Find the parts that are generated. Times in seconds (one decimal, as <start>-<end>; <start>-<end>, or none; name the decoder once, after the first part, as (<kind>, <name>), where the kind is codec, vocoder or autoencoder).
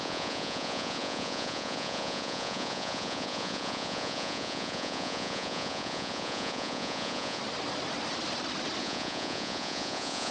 0.0-7.4 (vocoder, Vocos); 8.8-10.3